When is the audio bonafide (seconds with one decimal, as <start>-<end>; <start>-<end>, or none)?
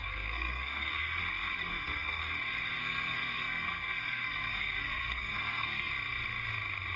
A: 1.2-1.6; 2.2-2.8; 5.9-7.0